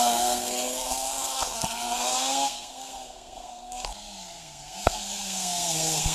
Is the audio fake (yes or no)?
yes